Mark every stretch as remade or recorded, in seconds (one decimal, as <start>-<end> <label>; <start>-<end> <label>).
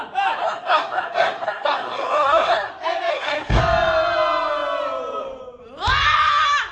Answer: 0.0-0.4 recorded; 0.4-2.7 remade; 2.7-3.1 recorded; 3.1-3.6 remade; 3.6-6.7 recorded